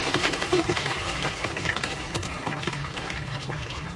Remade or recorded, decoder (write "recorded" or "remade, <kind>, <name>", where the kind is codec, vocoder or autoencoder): remade, codec, SNAC